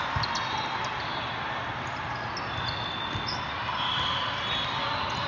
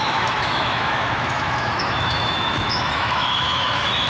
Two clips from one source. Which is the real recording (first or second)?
first